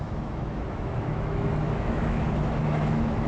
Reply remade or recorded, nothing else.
remade